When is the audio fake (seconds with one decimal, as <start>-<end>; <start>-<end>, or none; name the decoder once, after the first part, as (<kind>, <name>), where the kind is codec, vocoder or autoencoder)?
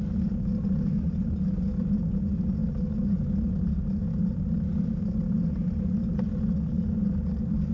none